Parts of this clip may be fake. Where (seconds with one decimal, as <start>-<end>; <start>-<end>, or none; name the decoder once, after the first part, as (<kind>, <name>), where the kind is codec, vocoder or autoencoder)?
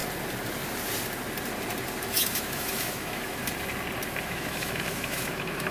2.0-3.4 (autoencoder, DAC-VAE); 4.2-5.7